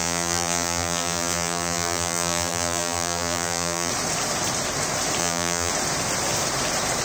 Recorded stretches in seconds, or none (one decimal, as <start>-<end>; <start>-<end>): 3.9-5.2; 5.7-7.0